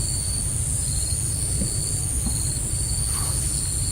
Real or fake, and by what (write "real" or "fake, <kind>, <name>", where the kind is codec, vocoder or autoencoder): real